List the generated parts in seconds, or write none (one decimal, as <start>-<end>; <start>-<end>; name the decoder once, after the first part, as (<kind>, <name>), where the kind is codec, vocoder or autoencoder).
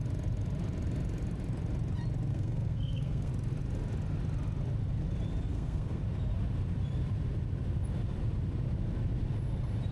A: 2.3-3.3 (codec, SNAC); 5.5-6.0